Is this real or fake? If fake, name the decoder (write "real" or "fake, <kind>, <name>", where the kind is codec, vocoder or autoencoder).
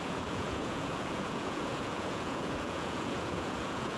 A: fake, vocoder, Vocos